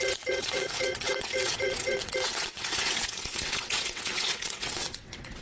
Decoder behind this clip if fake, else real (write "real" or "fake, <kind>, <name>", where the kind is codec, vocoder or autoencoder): fake, vocoder, WaveNeXt